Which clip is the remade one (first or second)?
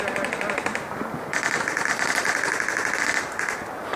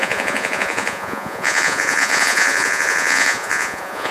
second